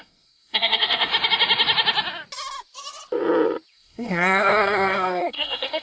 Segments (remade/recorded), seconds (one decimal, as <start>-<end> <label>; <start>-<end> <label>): 0.0-1.1 remade; 1.1-3.7 recorded; 3.7-5.8 remade

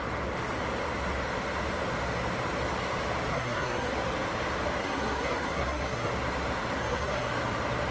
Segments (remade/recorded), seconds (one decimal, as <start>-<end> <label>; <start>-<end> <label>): 0.0-3.3 recorded; 3.3-3.9 remade; 3.9-4.8 recorded; 4.8-6.1 remade; 6.1-6.8 recorded; 6.8-7.3 remade; 7.3-7.9 recorded

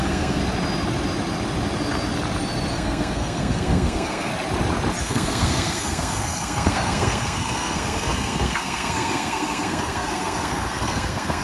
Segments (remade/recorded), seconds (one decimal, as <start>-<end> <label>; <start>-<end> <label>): 0.0-0.4 remade; 0.4-2.7 recorded; 2.7-4.3 remade; 4.3-5.0 recorded; 5.0-11.4 remade